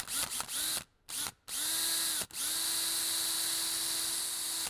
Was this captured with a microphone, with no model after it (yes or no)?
yes